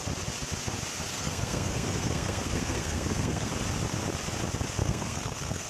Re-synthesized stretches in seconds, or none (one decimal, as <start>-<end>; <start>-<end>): 1.1-3.5; 4.8-5.7

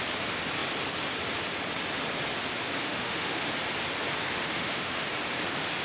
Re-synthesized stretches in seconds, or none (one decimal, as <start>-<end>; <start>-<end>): 2.8-3.5; 4.4-5.1

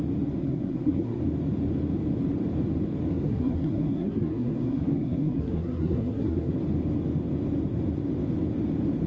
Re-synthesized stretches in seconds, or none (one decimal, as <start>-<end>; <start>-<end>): 0.4-1.2; 3.1-6.5

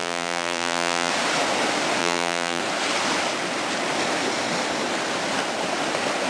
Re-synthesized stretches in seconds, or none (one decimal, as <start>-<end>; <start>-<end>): 0.0-1.1; 2.0-2.6

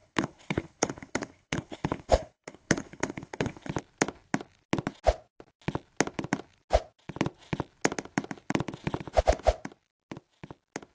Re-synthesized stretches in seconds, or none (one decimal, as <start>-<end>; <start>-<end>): 0.0-3.7